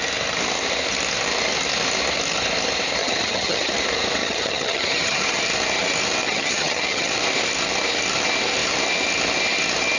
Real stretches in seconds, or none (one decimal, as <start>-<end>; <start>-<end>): 0.0-3.0; 3.7-4.2; 5.4-6.2; 7.1-10.0